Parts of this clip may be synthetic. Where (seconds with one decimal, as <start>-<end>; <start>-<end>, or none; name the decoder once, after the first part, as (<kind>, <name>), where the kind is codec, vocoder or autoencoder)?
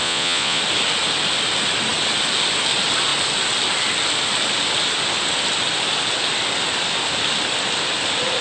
0.0-0.6 (vocoder, Vocos)